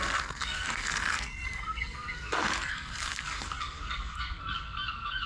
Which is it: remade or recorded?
remade